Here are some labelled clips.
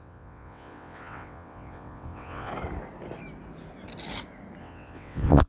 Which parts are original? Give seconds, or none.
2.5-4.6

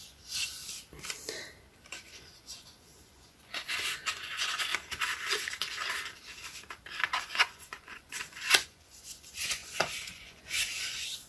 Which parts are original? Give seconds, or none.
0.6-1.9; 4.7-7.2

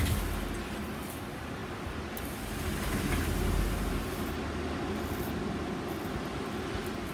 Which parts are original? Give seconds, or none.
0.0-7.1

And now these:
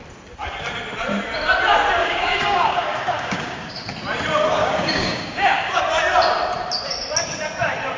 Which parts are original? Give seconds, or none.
0.0-2.0; 3.7-4.6; 5.8-8.0